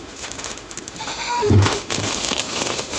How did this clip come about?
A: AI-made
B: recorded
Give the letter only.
A